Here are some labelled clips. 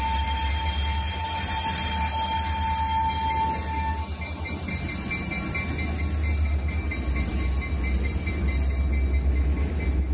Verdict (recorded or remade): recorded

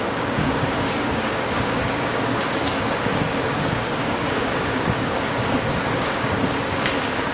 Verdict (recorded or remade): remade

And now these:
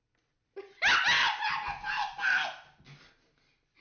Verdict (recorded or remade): recorded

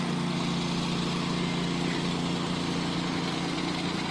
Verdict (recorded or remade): recorded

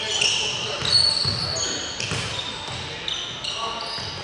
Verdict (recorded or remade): recorded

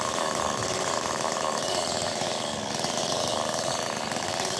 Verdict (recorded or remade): remade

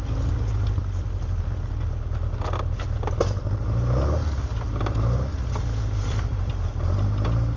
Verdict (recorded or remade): recorded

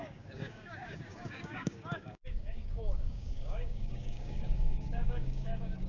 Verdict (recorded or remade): remade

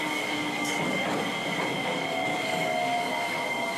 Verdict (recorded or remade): remade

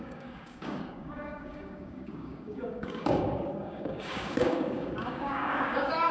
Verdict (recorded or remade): remade